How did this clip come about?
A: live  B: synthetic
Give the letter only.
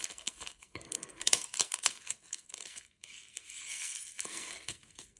B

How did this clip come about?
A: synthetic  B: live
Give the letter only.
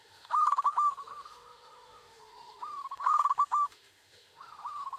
A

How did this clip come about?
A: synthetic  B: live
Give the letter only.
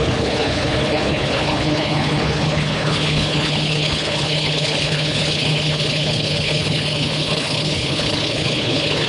A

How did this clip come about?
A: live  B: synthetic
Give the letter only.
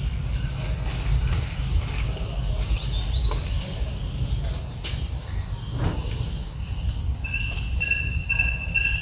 A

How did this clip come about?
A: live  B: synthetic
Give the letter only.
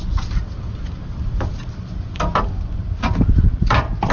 B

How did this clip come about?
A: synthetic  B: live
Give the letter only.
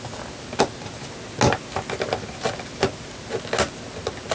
B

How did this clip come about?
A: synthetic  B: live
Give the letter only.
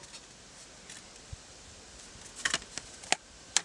B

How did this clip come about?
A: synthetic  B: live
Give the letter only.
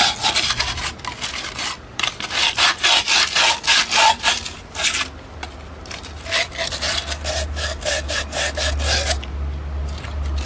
B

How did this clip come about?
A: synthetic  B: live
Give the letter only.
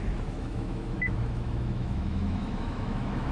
A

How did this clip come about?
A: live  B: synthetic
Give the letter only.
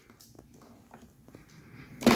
A